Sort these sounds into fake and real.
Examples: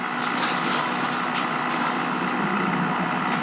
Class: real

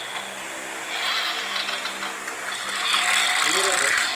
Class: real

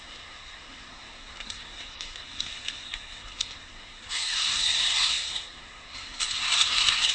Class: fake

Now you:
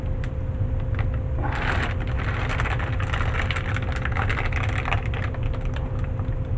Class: real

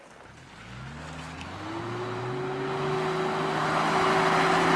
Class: real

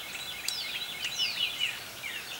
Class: real